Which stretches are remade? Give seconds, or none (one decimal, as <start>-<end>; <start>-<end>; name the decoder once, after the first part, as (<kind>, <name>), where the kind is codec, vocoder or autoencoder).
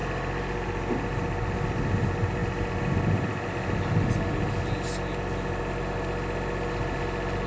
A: none